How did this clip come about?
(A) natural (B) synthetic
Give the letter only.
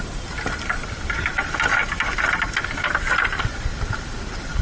A